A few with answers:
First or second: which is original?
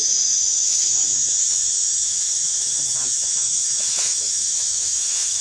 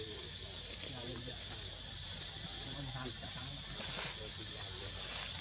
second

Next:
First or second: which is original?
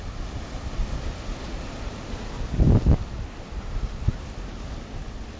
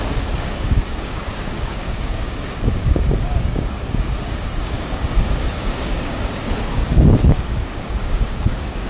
first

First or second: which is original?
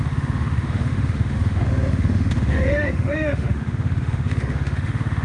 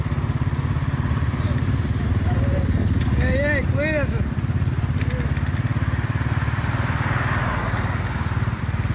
second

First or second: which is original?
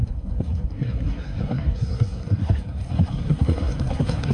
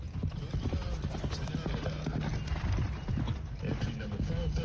second